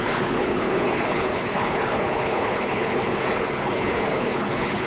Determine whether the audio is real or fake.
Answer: fake